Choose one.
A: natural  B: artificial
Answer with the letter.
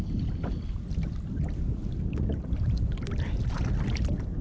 A